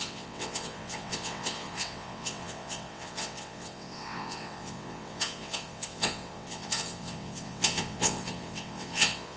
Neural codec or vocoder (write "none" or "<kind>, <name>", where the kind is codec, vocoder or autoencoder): vocoder, WaveNeXt